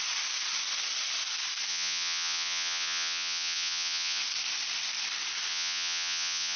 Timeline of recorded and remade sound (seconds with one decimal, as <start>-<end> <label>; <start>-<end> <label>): 0.0-1.7 recorded; 1.7-4.2 remade; 4.2-5.5 recorded; 5.5-6.6 remade